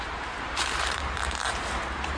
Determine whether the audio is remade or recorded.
remade